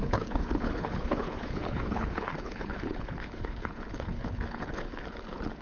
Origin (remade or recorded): remade